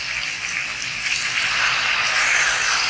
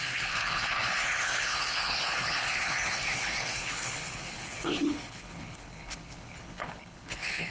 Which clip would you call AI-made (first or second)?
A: second